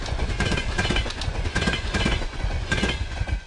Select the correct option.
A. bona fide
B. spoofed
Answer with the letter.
B